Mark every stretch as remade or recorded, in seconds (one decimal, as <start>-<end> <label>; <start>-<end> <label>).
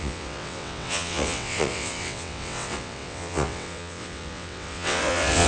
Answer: 0.0-5.5 remade